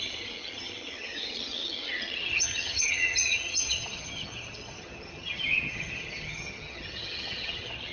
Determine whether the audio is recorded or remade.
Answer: remade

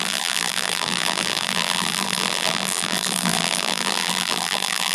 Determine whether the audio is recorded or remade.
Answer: remade